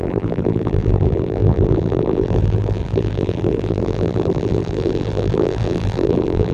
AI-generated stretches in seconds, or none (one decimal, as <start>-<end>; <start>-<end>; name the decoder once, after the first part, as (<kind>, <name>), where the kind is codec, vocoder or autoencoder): 0.0-6.5 (vocoder, BigVGAN v2)